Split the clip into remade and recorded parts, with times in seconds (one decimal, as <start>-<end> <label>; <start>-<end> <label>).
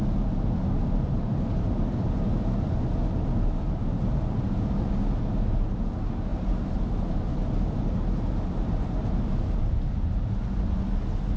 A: 0.0-11.4 recorded